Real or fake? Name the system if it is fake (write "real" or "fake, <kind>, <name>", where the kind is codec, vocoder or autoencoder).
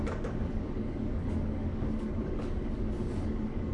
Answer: fake, codec, DAC